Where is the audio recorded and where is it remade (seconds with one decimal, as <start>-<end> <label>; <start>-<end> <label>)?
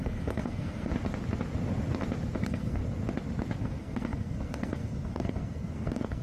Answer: 0.0-0.9 remade; 0.9-2.4 recorded; 2.4-2.8 remade; 2.8-3.6 recorded; 3.6-6.2 remade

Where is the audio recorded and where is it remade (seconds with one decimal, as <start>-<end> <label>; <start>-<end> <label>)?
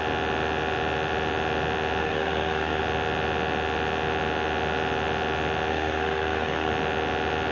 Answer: 0.0-2.0 recorded; 2.0-2.8 remade; 2.8-5.7 recorded; 5.7-6.7 remade; 6.7-7.5 recorded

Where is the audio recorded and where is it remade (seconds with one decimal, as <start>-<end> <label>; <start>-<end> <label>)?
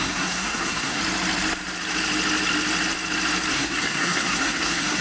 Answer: 0.0-1.0 remade; 1.0-3.5 recorded; 3.5-5.0 remade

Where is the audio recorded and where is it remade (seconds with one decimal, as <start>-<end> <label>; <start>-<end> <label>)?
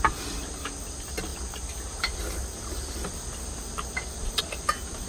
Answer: 0.0-5.1 recorded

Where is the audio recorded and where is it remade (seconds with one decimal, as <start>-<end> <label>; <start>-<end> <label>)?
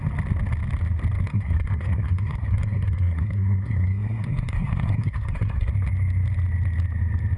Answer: 0.0-1.3 recorded; 1.3-5.7 remade; 5.7-7.4 recorded